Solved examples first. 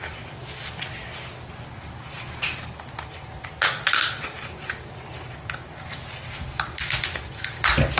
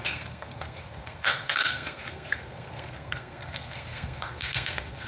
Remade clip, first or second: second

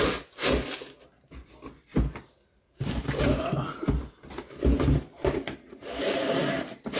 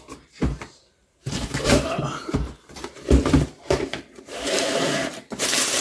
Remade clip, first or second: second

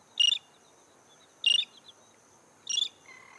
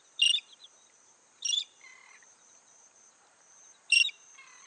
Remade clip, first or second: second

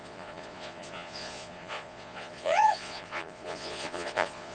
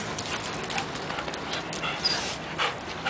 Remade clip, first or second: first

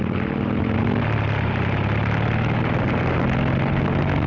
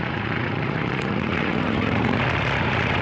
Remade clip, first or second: second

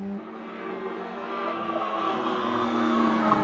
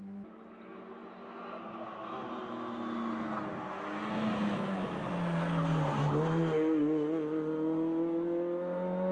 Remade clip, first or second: first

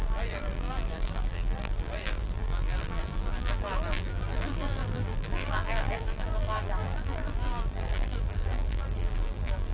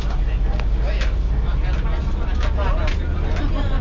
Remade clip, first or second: first